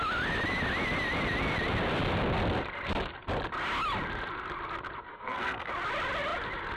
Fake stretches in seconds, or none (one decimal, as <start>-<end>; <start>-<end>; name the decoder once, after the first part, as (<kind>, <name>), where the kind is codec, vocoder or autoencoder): 5.1-5.7 (codec, SNAC)